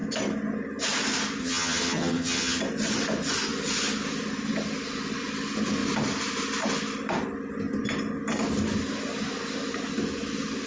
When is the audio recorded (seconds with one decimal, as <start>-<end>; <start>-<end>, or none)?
0.0-1.4; 2.6-10.7